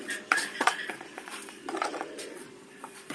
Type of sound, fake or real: fake